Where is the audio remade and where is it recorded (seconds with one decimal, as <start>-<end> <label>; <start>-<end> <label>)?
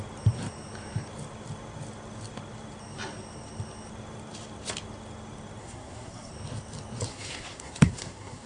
0.0-5.6 recorded; 5.6-6.3 remade; 6.3-7.1 recorded; 7.1-8.5 remade